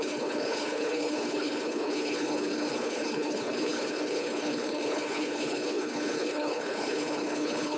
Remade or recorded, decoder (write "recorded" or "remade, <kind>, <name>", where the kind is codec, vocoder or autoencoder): remade, codec, HILCodec